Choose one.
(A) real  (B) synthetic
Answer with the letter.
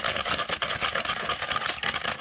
A